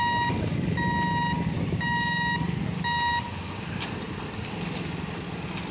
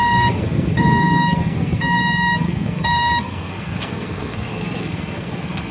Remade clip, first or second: second